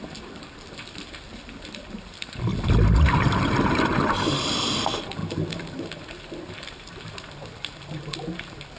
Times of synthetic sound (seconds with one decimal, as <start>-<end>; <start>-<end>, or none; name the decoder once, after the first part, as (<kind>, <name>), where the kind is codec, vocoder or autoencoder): none